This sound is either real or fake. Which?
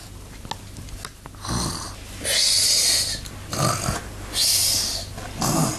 real